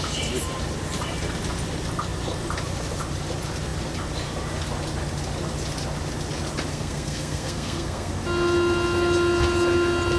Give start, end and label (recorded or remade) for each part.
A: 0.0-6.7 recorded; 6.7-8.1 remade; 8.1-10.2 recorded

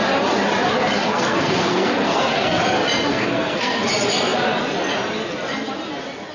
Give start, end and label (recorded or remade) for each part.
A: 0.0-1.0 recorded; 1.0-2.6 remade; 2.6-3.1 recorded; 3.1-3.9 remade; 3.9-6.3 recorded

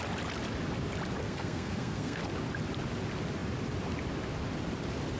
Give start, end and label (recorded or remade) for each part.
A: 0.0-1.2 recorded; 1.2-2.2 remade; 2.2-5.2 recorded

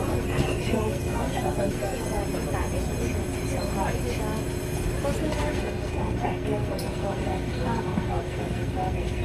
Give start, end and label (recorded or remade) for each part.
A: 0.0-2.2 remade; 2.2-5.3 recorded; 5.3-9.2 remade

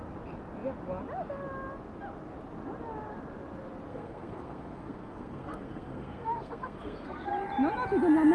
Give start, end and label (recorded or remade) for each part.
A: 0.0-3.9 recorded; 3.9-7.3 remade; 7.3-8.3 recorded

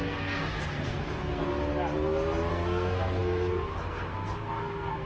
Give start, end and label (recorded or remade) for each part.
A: 0.0-1.4 remade; 1.4-2.5 recorded; 2.5-5.1 remade

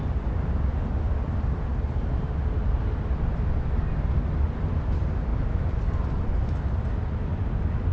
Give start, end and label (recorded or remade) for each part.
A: 0.0-7.9 recorded

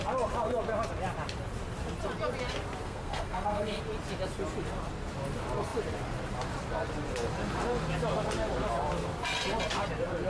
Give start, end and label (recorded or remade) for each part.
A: 0.0-2.8 recorded; 2.8-3.8 remade; 3.8-10.3 recorded